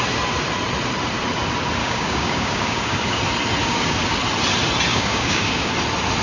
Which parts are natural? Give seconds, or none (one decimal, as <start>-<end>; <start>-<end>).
0.0-1.8; 3.2-3.6; 4.2-4.9; 5.7-6.2